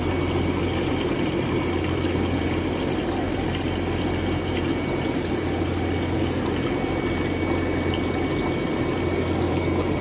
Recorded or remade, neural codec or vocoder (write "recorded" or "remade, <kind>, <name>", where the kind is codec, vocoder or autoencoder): recorded